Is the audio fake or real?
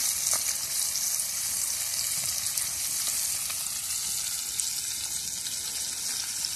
real